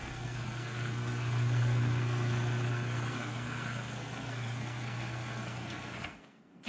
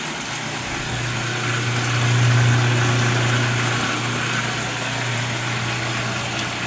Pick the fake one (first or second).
first